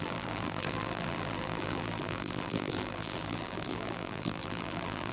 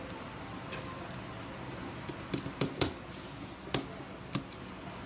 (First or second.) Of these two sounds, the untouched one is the second